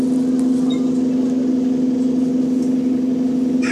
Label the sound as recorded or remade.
recorded